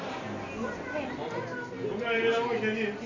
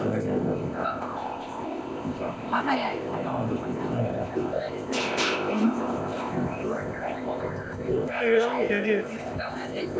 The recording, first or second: first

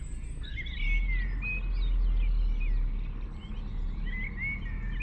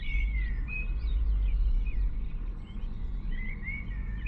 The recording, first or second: first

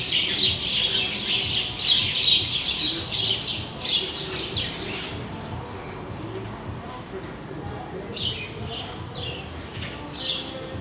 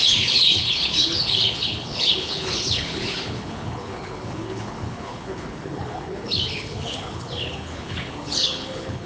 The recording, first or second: first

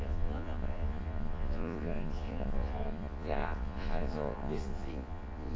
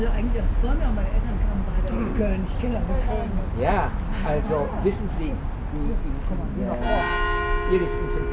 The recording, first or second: second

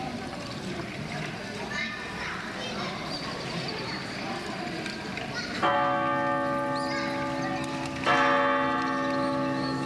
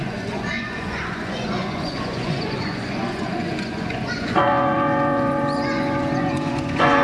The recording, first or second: first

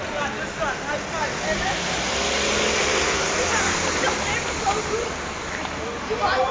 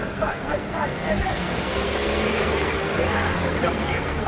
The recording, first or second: first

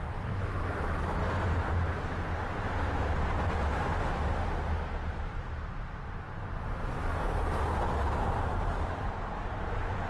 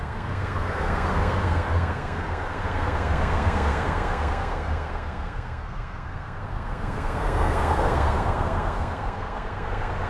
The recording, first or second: first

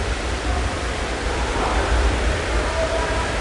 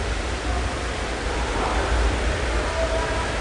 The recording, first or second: second